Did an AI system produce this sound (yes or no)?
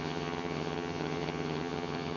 yes